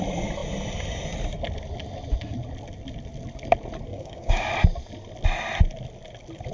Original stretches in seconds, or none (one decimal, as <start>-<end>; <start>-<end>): 0.0-3.9; 4.5-6.5